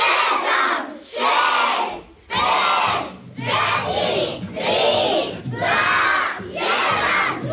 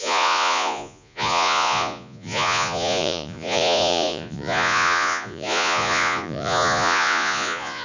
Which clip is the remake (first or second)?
second